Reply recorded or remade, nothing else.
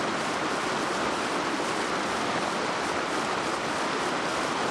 recorded